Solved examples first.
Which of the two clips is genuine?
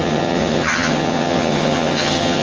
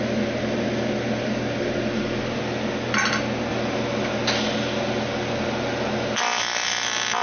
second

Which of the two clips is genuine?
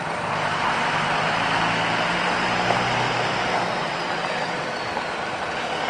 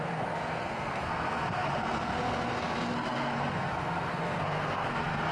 first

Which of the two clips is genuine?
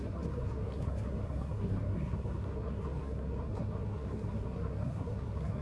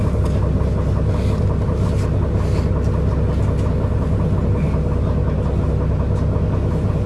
second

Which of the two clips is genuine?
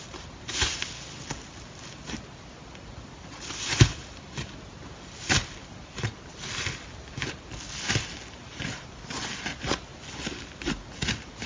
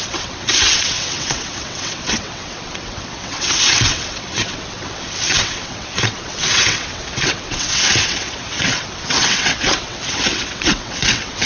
first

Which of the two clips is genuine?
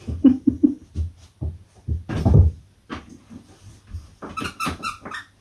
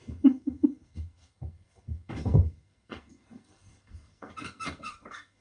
first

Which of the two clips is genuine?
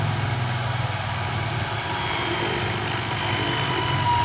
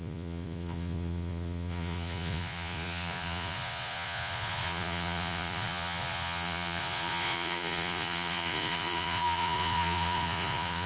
first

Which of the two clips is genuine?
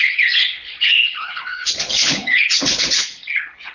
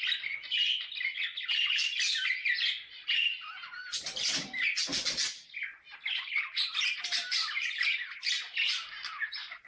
second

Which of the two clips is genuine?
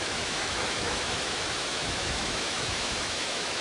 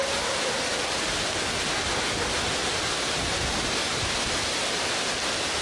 second